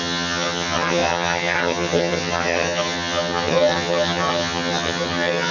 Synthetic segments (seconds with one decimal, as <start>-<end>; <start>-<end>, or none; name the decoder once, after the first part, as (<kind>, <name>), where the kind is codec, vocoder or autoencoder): 0.0-5.5 (vocoder, HiFi-GAN)